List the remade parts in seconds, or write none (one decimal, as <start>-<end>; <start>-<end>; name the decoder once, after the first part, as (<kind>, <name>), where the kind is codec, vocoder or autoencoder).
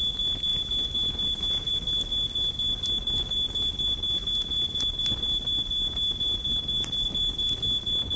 0.5-1.7 (vocoder, BigVGAN v2); 5.8-7.1